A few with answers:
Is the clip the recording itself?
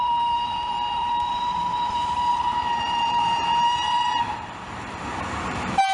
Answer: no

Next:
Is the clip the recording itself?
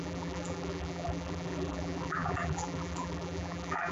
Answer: no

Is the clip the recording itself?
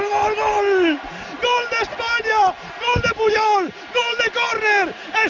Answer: yes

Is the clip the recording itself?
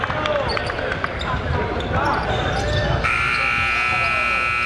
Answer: yes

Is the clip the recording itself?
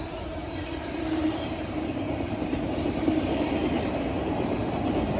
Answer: no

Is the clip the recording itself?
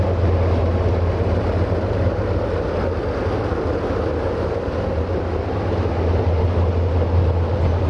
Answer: yes